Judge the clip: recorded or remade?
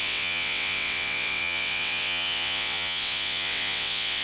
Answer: remade